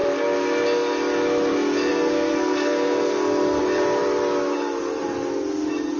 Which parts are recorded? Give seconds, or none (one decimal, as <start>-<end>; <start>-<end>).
0.0-1.9; 3.6-6.0